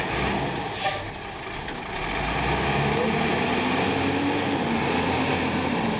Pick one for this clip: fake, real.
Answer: real